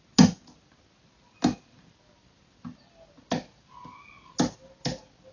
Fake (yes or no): no